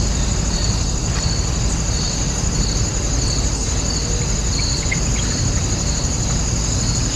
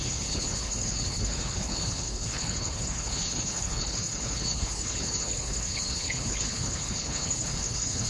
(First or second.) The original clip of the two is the first